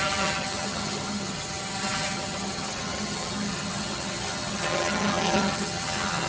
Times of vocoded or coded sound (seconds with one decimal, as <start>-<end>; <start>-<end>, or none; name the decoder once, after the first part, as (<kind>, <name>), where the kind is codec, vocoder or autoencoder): 0.0-6.3 (vocoder, HiFi-GAN)